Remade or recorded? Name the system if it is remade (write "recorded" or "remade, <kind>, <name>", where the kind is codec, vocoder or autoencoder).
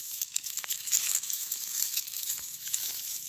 remade, autoencoder, DAC-VAE